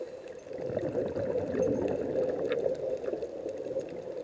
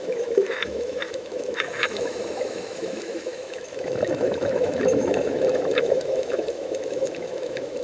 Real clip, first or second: first